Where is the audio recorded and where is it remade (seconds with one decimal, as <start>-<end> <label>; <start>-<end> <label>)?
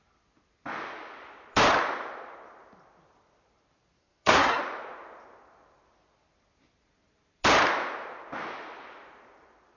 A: 0.0-4.0 recorded; 4.0-4.6 remade; 4.6-9.8 recorded